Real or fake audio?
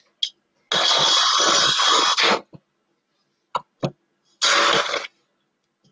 real